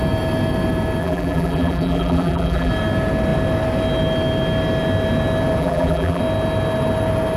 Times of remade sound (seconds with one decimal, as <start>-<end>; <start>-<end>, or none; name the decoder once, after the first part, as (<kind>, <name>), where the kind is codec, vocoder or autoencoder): 1.0-2.7 (vocoder, BigVGAN v2); 5.6-6.2